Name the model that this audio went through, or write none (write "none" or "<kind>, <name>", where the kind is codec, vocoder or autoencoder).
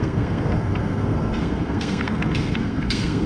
codec, SNAC